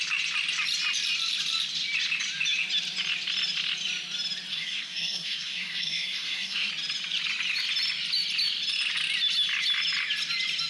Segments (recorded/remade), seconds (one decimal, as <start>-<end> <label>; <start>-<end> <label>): 0.0-4.5 recorded; 4.5-6.7 remade; 6.7-10.7 recorded

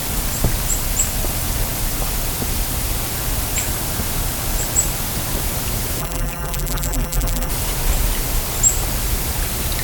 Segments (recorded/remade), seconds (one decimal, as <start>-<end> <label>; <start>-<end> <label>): 0.0-6.0 recorded; 6.0-7.5 remade; 7.5-9.8 recorded